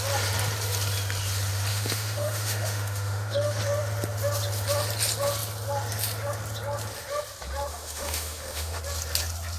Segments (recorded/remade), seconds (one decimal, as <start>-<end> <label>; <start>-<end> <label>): 0.0-1.7 recorded; 1.7-3.6 remade; 3.6-7.7 recorded; 7.7-8.8 remade; 8.8-9.6 recorded